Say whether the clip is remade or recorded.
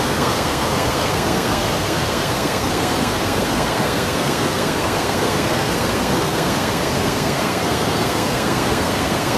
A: remade